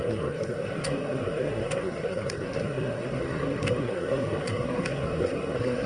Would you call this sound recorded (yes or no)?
no